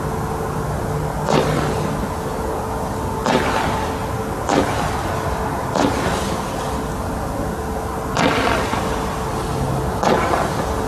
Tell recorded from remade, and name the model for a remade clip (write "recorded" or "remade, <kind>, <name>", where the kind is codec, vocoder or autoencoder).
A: recorded